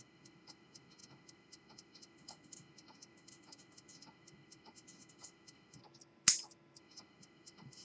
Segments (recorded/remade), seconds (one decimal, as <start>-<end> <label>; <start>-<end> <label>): 0.0-5.8 remade; 5.8-6.8 recorded; 6.8-7.8 remade